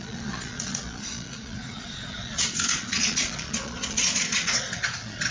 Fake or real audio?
fake